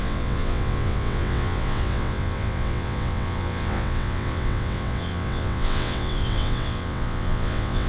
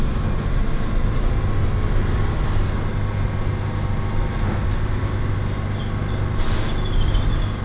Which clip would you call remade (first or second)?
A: first